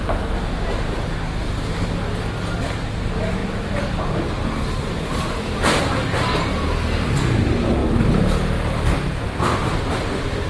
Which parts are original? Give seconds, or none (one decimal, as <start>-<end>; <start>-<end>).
0.0-10.5